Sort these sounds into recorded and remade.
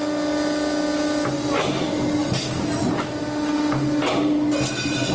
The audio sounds recorded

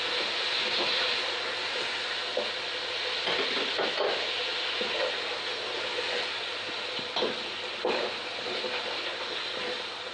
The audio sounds recorded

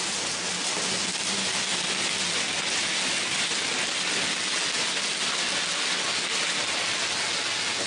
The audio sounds recorded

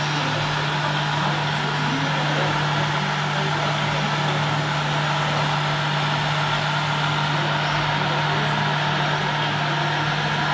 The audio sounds recorded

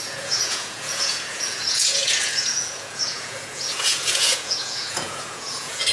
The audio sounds remade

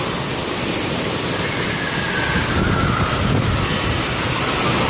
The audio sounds recorded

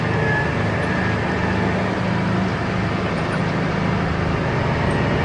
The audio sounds recorded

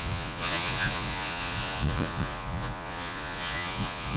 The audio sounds remade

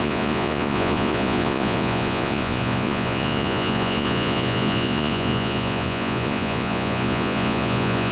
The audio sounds remade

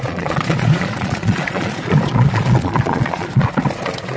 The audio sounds remade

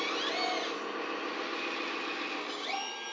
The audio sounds recorded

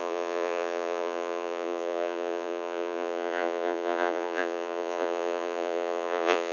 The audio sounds remade